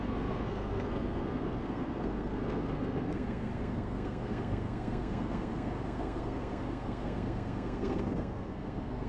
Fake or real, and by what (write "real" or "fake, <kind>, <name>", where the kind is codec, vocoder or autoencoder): fake, codec, SNAC